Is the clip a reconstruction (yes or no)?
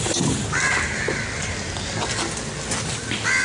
no